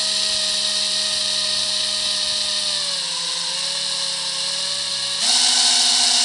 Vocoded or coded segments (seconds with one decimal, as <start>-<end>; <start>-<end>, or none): none